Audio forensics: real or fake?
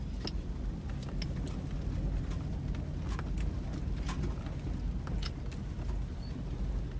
real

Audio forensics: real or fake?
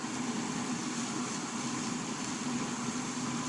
real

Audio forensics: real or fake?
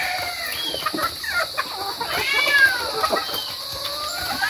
real